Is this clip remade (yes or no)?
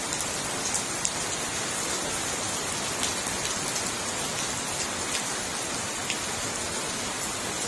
no